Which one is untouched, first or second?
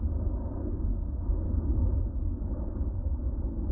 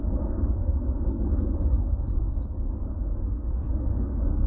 first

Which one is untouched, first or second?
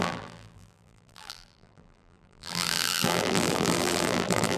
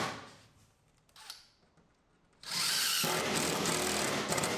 second